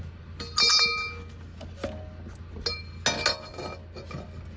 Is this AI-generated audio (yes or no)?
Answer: no